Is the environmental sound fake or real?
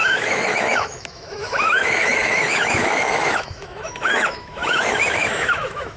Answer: fake